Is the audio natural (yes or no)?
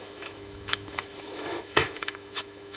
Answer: no